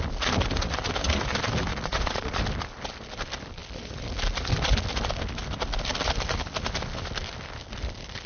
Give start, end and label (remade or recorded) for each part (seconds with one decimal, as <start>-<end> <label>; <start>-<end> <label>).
0.0-1.7 recorded; 1.7-2.4 remade; 2.4-8.3 recorded